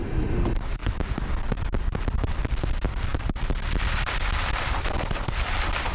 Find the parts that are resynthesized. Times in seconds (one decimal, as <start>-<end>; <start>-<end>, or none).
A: none